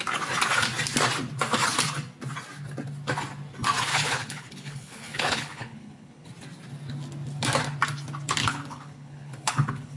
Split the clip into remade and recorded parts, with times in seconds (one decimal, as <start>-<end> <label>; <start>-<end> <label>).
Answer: 0.0-3.9 recorded; 3.9-6.3 remade; 6.3-8.4 recorded; 8.4-10.0 remade